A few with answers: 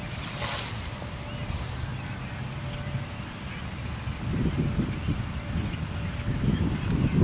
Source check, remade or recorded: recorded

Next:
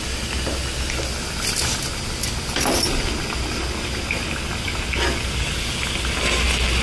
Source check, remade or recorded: recorded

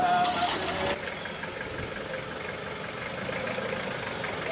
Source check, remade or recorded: recorded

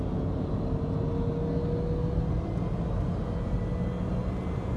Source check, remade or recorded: recorded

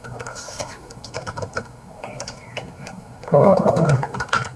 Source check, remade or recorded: remade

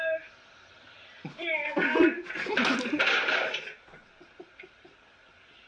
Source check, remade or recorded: recorded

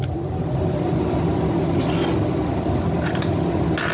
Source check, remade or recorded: recorded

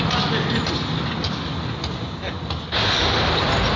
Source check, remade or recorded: recorded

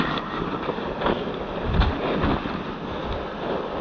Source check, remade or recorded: recorded